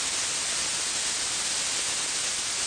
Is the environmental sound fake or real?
real